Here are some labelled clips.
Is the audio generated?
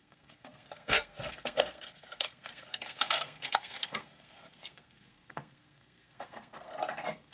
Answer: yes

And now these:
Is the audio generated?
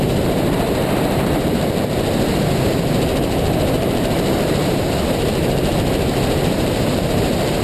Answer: yes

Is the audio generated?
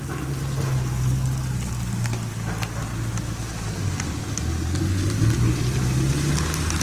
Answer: no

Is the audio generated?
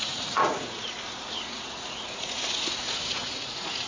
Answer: yes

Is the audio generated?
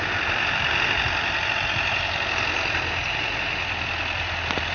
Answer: no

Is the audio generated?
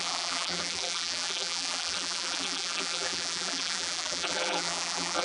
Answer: yes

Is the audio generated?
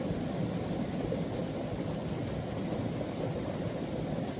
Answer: no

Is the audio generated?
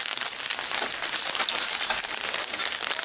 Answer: yes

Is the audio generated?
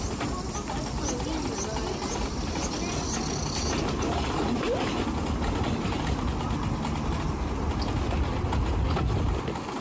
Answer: no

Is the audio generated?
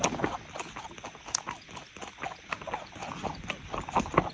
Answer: no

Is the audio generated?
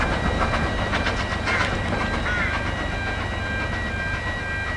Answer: no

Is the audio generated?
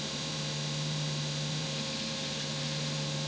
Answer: no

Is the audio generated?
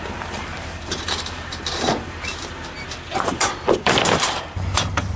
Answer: yes